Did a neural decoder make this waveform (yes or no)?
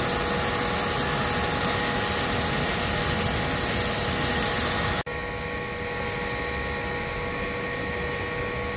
no